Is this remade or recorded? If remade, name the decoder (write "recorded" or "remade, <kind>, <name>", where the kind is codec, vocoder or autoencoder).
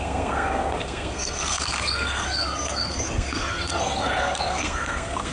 remade, codec, SNAC